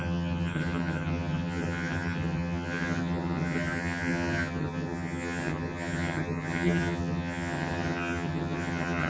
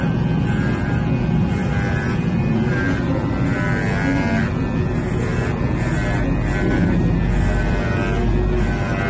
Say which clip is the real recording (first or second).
second